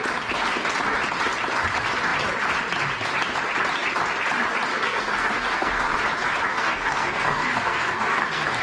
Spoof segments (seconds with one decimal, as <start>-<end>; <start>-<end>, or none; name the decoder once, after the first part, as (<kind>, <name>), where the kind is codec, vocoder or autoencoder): 4.7-6.0 (codec, SNAC); 6.5-8.6